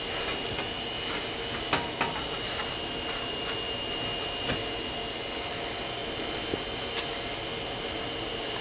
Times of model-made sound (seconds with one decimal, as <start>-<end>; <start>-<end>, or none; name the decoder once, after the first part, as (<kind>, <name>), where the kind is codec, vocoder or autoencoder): none